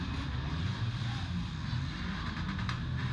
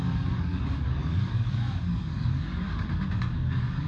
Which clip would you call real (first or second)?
first